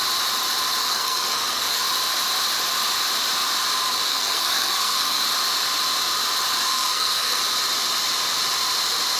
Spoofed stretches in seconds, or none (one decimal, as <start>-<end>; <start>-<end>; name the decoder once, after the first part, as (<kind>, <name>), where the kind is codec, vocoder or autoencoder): 0.8-1.8 (codec, SNAC); 4.1-5.2; 6.7-7.4